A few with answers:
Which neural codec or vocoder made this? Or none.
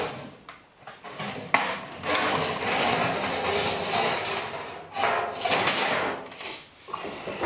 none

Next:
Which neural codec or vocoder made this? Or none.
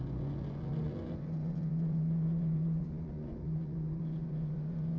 vocoder, Vocos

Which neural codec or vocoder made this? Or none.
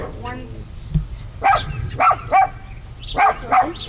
none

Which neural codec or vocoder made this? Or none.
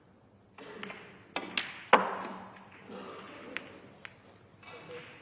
none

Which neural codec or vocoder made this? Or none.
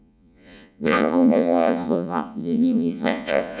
vocoder, Vocos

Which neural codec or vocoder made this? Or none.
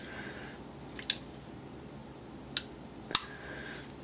none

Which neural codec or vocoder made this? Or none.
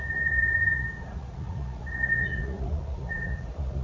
vocoder, Vocos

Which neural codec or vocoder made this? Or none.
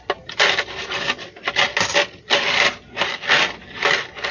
none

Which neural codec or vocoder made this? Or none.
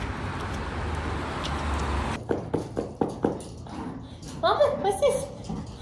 none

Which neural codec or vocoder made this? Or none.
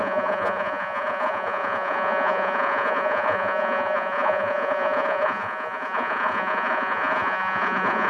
vocoder, Vocos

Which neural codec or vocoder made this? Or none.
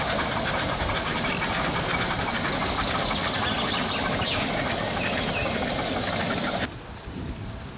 none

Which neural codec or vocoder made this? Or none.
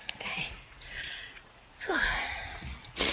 vocoder, Vocos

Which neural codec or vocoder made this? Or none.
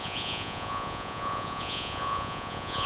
vocoder, Vocos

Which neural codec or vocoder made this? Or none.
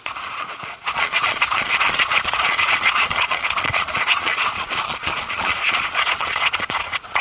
vocoder, Vocos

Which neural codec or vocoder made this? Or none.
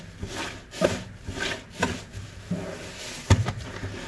none